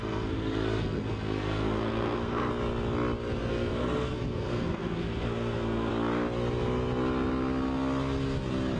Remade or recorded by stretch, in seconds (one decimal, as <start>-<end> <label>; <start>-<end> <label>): 0.0-2.5 remade; 2.5-3.5 recorded; 3.5-5.9 remade; 5.9-8.8 recorded